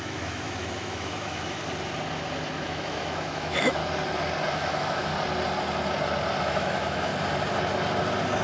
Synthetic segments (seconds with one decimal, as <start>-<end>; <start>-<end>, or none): 0.0-1.6; 2.6-3.8; 4.5-5.1; 6.4-7.1